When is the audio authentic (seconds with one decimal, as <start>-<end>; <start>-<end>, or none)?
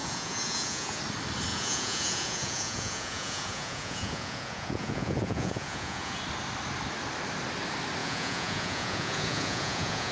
1.0-1.5; 6.2-8.0